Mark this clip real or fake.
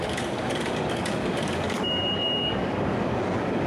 fake